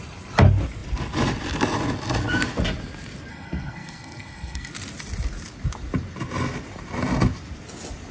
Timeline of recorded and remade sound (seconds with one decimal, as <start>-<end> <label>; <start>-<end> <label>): 0.0-3.3 recorded; 3.3-4.7 remade; 4.7-8.1 recorded